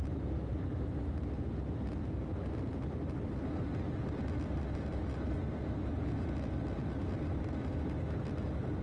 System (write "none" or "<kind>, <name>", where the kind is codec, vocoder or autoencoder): none